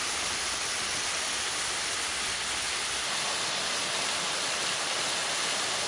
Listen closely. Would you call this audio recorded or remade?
recorded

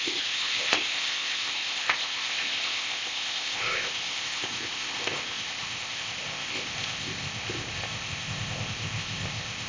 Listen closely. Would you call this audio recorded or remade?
remade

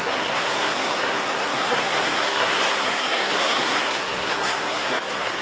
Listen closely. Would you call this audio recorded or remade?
remade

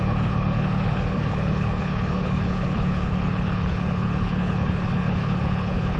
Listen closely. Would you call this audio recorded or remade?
remade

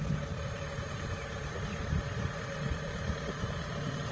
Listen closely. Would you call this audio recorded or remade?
recorded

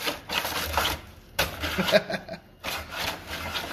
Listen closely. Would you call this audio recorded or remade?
recorded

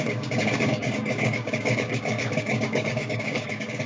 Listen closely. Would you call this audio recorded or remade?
remade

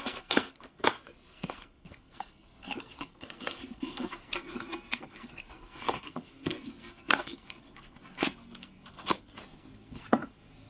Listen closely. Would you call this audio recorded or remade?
remade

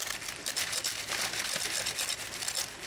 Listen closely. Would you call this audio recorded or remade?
recorded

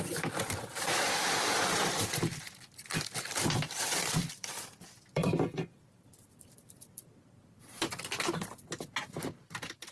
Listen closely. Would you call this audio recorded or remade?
remade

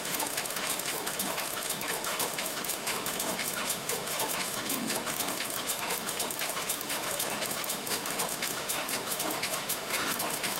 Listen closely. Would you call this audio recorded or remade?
remade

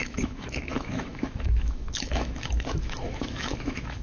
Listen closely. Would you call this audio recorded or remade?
remade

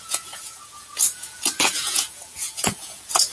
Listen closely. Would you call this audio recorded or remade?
remade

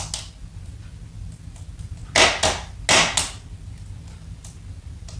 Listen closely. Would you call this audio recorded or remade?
recorded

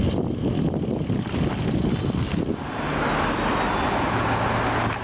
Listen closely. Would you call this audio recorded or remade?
recorded